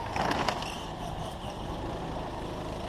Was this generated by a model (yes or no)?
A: no